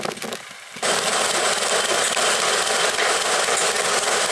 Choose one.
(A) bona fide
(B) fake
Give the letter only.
A